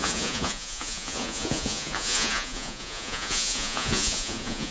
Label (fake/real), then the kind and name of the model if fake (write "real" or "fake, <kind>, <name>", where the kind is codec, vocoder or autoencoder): fake, vocoder, Vocos